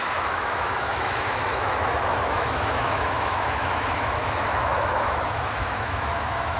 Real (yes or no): no